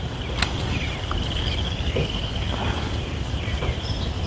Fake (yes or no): no